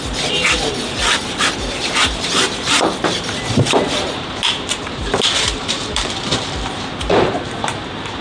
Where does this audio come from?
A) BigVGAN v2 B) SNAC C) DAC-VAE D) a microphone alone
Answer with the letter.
A